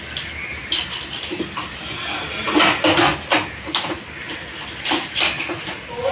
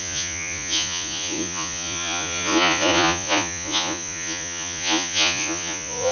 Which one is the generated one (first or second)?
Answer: second